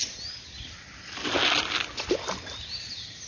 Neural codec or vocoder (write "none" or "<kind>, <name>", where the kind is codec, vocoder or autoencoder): none